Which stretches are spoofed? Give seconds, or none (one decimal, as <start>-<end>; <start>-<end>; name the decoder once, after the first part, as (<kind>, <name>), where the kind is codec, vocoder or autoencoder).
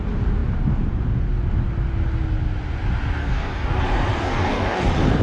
3.2-3.8 (codec, DAC); 4.2-4.8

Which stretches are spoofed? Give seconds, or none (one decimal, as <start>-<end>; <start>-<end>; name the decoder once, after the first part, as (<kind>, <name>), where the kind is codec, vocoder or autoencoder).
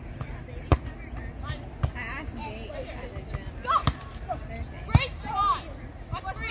none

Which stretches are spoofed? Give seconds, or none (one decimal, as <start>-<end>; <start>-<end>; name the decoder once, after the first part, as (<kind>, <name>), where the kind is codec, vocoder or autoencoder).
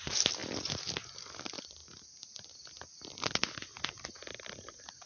none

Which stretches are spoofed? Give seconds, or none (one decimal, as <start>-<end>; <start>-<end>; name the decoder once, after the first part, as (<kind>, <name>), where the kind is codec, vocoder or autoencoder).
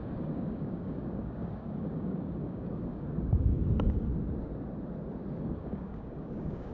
0.0-4.1 (codec, DAC); 5.4-6.7